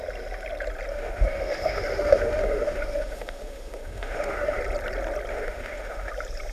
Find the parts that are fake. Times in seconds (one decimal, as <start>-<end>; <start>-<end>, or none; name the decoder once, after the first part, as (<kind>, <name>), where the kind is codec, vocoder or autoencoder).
0.9-4.6 (autoencoder, DAC-VAE); 5.3-6.1